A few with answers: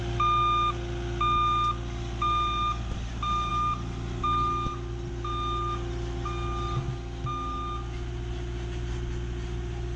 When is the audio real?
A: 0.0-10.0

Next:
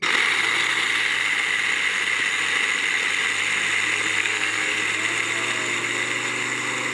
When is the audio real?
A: 0.0-4.2; 4.8-6.9

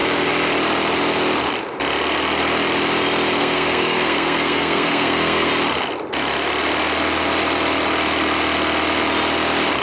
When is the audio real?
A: 0.0-3.4; 5.5-9.8

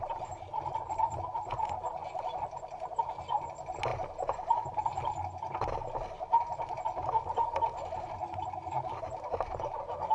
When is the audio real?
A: 0.0-10.1

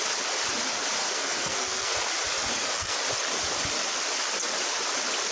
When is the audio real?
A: 0.0-1.0; 1.9-2.5; 3.0-5.3

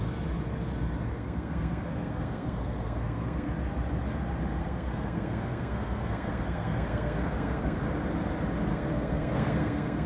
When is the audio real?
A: 0.0-1.1; 3.5-4.6; 7.8-8.7